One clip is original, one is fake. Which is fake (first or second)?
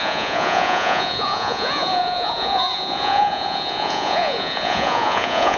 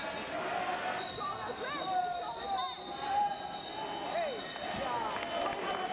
first